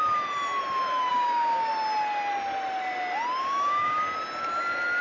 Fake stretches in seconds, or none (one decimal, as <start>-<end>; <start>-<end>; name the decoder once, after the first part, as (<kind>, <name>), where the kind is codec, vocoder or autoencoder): 1.1-1.7 (codec, DAC); 3.4-4.0